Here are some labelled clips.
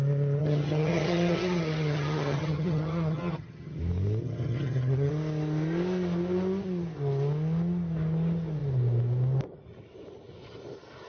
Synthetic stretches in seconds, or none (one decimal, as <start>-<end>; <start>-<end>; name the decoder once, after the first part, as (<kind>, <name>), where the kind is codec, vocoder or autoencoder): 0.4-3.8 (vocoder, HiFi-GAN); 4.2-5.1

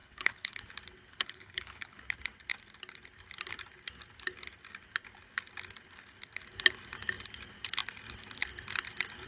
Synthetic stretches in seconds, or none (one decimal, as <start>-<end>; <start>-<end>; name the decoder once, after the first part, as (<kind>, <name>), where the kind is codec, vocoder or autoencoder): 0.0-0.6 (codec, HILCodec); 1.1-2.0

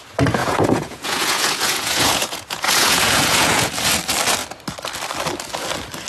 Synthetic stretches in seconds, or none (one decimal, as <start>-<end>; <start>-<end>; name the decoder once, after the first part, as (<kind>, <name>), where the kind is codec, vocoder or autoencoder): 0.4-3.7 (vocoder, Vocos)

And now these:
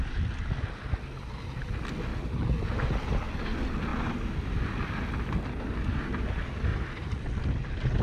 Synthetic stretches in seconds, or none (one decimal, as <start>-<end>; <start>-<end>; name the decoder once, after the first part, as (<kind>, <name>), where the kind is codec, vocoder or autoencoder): 2.1-3.3 (vocoder, BigVGAN v2); 3.9-4.7; 6.7-7.3

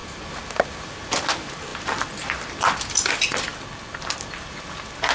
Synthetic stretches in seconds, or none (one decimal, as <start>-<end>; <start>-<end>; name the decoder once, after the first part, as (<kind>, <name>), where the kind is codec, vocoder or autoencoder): 0.8-3.5 (vocoder, BigVGAN v2); 4.0-5.1

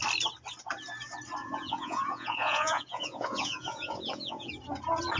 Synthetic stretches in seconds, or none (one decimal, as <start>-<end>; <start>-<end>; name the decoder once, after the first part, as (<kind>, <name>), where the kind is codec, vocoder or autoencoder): 1.4-4.5 (vocoder, Vocos)

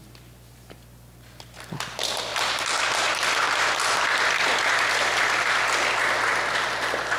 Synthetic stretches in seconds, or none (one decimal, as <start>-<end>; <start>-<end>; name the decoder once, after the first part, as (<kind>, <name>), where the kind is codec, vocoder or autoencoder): 2.3-2.8 (vocoder, BigVGAN v2)